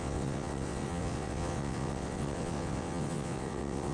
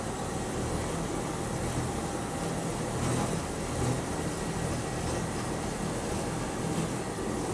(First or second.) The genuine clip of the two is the second